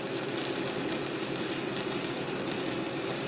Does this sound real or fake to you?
real